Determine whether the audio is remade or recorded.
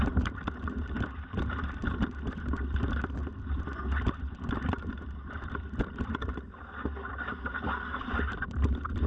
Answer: remade